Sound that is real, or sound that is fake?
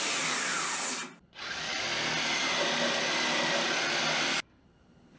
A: real